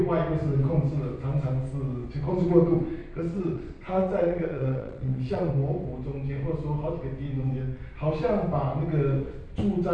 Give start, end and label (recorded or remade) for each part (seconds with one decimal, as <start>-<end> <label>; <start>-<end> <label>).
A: 0.0-3.0 recorded; 3.0-5.5 remade; 5.5-9.9 recorded